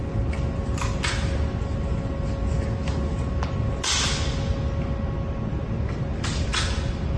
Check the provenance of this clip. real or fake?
real